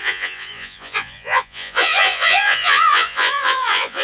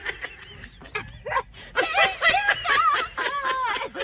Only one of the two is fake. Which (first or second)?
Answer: first